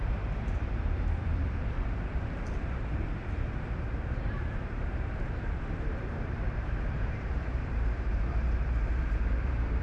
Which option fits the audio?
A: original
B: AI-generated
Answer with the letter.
B